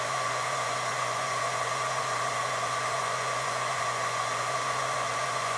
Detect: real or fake fake